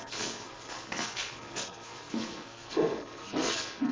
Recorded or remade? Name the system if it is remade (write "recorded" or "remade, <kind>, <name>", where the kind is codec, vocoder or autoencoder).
remade, codec, SNAC